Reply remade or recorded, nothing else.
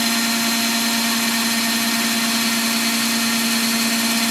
recorded